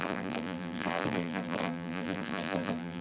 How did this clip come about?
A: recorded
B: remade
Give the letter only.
B